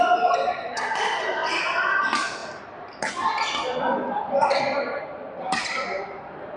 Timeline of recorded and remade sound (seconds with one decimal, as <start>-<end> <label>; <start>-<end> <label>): 0.0-2.4 remade; 2.4-5.6 recorded; 5.6-6.6 remade